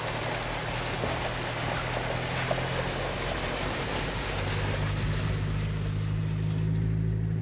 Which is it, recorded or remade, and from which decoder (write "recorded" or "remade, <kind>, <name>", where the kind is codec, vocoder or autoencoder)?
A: recorded